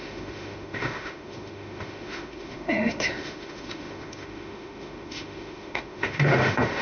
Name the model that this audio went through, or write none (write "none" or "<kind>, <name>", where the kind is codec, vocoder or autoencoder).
autoencoder, DAC-VAE